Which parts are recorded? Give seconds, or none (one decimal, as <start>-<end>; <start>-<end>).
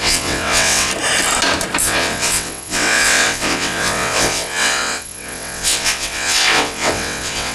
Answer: 0.9-1.8